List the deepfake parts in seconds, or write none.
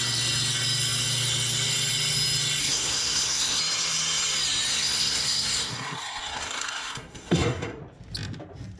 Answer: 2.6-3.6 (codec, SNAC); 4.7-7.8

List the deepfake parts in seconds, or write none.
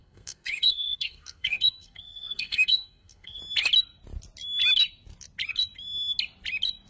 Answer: 0.0-3.4 (codec, SNAC)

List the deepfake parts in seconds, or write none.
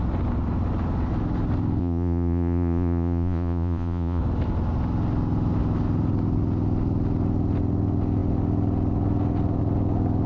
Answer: 1.8-4.2 (vocoder, Vocos)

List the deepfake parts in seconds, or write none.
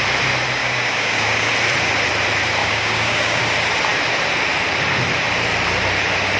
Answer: 0.6-1.5 (codec, DAC); 2.6-3.4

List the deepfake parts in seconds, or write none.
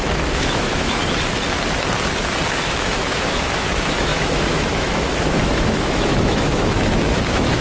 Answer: 0.0-1.0 (autoencoder, DAC-VAE); 2.5-7.6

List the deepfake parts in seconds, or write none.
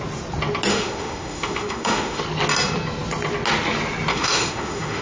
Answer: 0.7-2.2 (autoencoder, DAC-VAE); 4.1-5.0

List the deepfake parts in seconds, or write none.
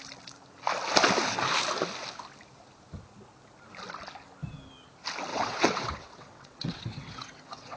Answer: 5.3-7.8 (vocoder, WaveNeXt)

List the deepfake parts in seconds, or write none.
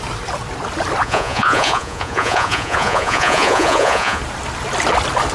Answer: 1.0-4.2 (vocoder, Vocos)